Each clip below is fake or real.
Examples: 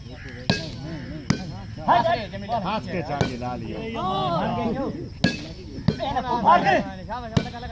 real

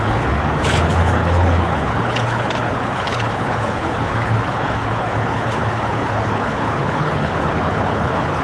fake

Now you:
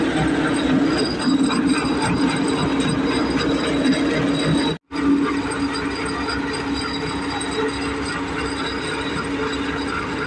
real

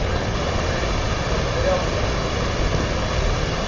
real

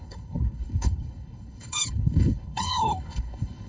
fake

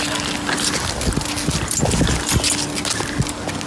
real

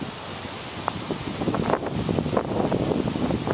real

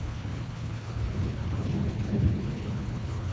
fake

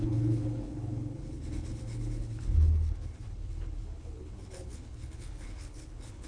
fake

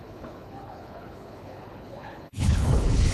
fake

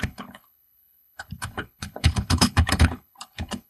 fake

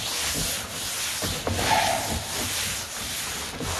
real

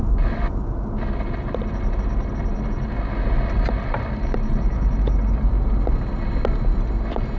real